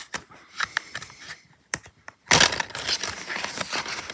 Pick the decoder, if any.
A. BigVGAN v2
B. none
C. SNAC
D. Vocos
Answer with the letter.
B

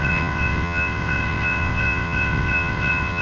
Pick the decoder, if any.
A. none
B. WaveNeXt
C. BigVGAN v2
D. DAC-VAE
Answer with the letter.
B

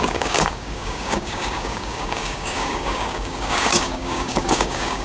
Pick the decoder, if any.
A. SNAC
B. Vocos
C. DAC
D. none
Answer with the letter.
C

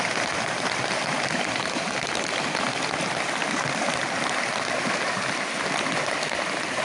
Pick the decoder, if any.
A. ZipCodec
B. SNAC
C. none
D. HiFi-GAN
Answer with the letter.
C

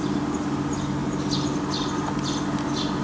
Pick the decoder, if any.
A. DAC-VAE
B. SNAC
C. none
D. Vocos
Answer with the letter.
C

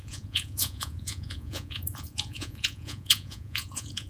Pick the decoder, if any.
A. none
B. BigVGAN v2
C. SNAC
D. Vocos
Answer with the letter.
D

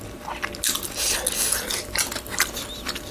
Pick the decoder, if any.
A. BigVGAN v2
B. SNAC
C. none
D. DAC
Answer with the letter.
C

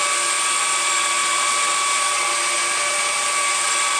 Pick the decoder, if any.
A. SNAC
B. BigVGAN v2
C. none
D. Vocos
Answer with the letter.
C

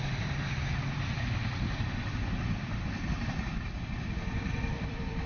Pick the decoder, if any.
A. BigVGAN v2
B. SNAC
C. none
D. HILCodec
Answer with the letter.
A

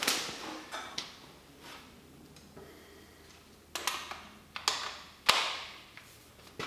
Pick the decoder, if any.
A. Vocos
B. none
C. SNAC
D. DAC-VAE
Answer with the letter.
B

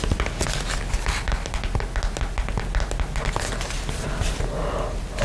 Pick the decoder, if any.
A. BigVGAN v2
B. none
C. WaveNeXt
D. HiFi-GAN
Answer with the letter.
B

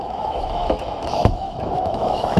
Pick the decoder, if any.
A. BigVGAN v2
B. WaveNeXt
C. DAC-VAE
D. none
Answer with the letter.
C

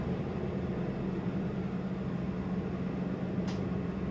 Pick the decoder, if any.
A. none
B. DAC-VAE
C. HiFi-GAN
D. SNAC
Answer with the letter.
A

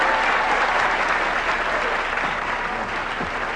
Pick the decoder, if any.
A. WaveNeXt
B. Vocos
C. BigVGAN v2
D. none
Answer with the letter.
D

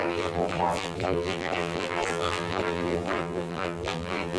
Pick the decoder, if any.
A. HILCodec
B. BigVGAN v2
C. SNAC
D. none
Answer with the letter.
B